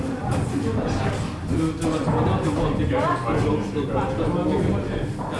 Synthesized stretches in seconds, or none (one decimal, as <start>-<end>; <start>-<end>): none